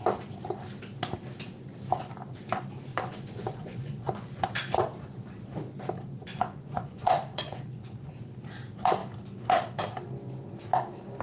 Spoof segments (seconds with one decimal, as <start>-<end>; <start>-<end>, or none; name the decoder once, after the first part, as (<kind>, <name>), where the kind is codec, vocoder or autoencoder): 2.9-4.3 (vocoder, Vocos); 6.2-8.1